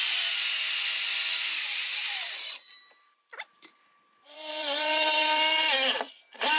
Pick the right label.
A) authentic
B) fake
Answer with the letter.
B